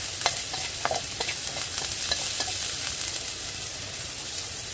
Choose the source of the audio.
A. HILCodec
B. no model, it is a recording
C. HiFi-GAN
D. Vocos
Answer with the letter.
B